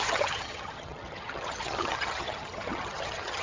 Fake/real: fake